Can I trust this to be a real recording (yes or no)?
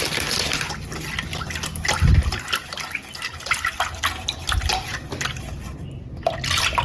yes